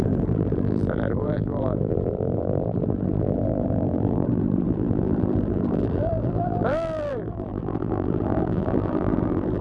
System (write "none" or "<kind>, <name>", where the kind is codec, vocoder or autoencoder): vocoder, BigVGAN v2